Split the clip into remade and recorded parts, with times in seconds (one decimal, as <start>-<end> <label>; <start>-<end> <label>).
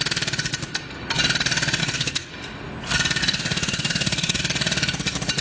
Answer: 0.0-1.8 recorded; 1.8-2.3 remade; 2.3-3.2 recorded; 3.2-4.4 remade; 4.4-5.4 recorded